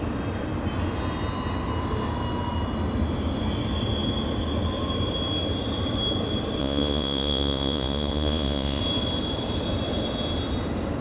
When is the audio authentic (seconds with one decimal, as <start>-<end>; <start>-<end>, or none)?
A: 0.0-6.6; 8.8-11.0